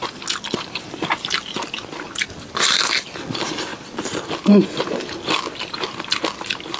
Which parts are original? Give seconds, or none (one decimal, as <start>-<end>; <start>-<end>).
0.0-6.8